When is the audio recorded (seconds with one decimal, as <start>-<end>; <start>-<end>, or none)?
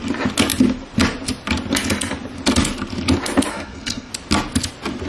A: 0.0-3.5; 4.1-5.1